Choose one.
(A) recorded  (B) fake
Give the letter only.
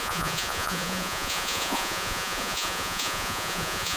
B